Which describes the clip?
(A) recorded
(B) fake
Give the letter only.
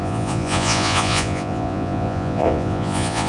B